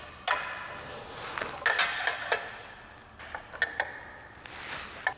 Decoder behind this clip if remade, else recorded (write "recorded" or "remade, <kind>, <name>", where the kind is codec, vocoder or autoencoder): recorded